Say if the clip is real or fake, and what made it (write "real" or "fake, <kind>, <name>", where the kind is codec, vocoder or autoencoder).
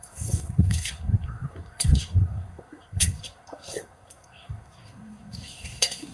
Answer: fake, codec, SNAC